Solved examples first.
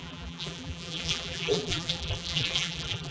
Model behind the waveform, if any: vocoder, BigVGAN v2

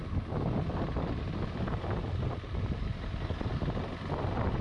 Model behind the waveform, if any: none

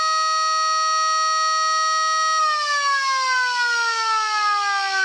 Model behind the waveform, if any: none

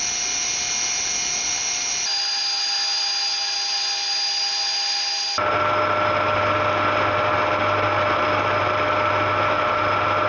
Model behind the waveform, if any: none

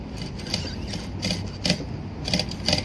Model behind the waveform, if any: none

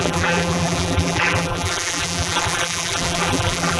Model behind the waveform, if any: vocoder, BigVGAN v2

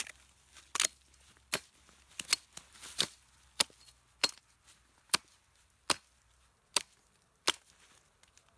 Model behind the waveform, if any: none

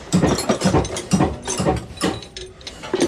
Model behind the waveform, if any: vocoder, BigVGAN v2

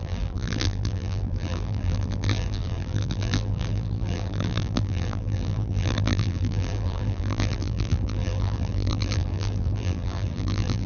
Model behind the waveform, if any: vocoder, BigVGAN v2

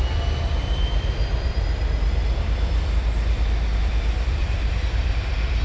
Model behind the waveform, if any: vocoder, BigVGAN v2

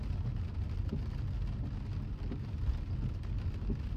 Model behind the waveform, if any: none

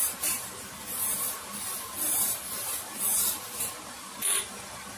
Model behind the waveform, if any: none